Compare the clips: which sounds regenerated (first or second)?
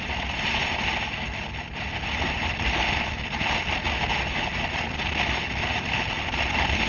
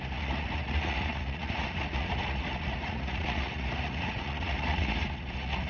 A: second